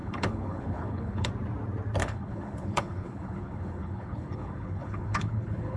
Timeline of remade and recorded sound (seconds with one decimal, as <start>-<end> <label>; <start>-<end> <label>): 0.0-1.3 remade; 1.3-2.0 recorded; 2.0-5.8 remade